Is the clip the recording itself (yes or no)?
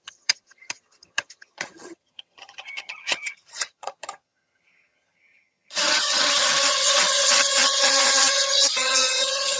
no